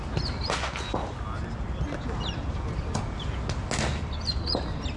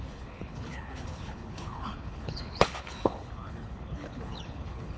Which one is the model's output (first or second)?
second